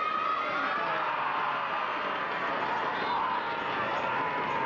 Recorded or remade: recorded